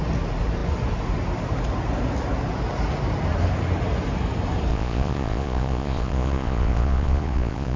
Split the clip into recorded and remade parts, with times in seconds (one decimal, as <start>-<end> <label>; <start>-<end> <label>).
0.0-4.7 recorded; 4.7-7.8 remade